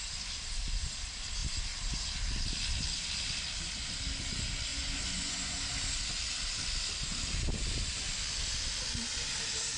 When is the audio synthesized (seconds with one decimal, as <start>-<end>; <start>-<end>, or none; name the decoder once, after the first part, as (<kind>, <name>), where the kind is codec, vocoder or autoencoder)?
4.7-5.7 (vocoder, Vocos)